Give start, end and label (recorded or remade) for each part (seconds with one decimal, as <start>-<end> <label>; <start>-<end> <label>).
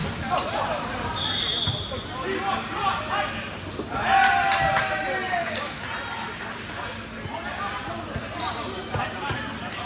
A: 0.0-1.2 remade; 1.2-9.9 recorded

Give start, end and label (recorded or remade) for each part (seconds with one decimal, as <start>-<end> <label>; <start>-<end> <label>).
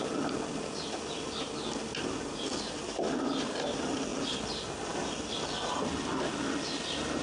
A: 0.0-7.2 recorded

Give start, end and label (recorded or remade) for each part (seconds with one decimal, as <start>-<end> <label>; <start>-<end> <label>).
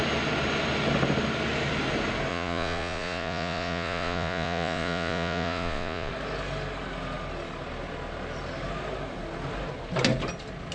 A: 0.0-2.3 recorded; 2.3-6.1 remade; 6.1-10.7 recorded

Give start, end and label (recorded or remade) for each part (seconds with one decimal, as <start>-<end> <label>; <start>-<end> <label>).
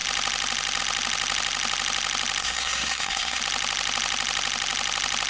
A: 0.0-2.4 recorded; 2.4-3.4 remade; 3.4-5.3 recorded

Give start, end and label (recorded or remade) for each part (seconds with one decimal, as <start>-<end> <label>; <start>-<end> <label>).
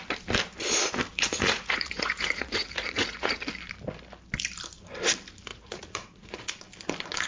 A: 0.0-1.1 recorded; 1.1-3.4 remade; 3.4-5.5 recorded; 5.5-6.6 remade; 6.6-7.3 recorded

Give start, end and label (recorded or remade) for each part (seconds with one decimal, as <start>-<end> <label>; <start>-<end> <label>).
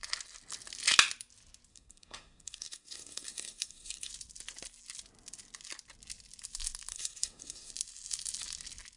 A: 0.0-1.7 recorded; 1.7-4.1 remade; 4.1-6.9 recorded; 6.9-7.7 remade; 7.7-9.0 recorded